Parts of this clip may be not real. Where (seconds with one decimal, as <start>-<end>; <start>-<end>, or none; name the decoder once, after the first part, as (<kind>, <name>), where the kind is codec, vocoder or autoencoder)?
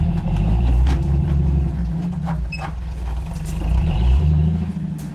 0.0-1.8 (vocoder, BigVGAN v2); 3.8-4.4